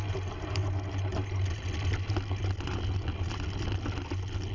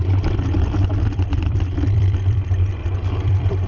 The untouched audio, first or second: first